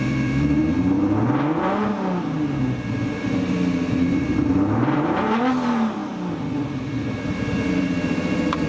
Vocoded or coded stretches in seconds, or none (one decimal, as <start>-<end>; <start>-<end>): 0.0-0.6; 3.5-8.7